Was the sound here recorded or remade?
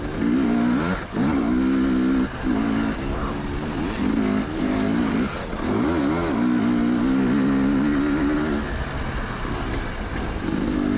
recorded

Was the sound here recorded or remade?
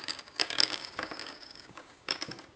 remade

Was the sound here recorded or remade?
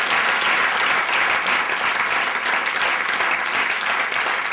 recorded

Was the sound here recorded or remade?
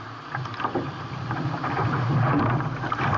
recorded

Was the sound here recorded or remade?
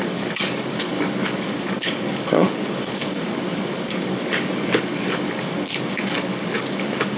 remade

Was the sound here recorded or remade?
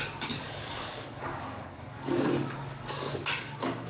remade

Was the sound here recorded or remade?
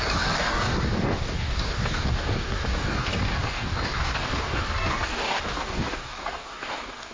remade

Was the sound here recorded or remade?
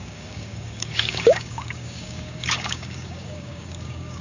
remade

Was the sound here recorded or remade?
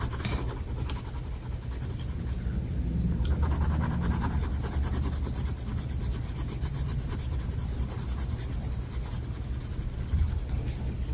recorded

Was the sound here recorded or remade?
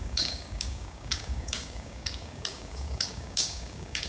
remade